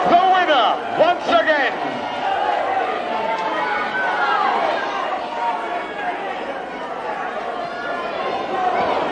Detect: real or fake real